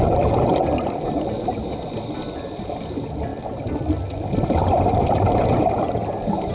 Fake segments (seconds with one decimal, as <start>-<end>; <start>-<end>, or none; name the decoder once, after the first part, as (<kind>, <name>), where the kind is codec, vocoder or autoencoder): none